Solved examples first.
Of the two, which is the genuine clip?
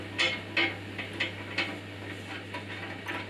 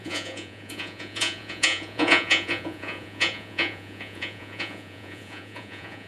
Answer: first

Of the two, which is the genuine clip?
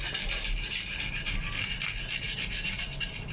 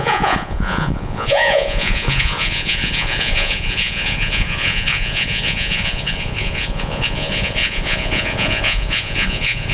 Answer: first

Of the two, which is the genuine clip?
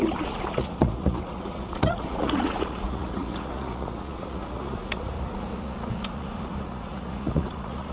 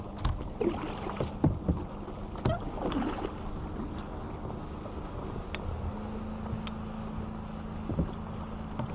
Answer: second